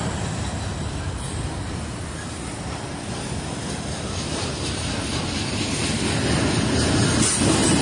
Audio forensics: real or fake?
real